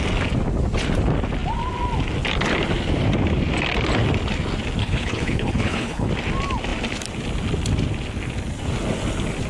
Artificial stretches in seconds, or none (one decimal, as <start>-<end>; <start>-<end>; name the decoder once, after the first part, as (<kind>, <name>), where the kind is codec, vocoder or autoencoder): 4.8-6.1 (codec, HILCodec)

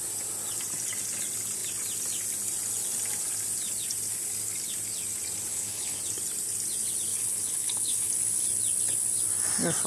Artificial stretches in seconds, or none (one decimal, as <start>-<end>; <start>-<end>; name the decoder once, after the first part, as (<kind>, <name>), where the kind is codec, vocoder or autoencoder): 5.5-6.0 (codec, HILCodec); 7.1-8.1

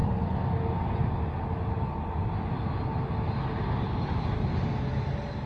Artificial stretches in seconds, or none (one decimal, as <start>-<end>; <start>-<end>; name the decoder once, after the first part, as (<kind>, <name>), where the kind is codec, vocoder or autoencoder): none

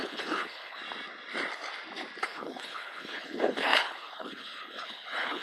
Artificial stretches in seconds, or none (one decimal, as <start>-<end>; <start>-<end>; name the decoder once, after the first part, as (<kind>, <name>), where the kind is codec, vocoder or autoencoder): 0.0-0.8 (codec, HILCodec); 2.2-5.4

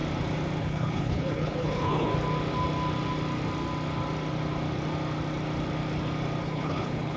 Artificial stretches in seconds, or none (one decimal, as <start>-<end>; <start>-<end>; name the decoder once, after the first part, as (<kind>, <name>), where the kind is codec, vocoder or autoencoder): 0.6-2.1 (codec, HILCodec); 6.4-7.2